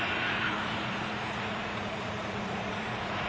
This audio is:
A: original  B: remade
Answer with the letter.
B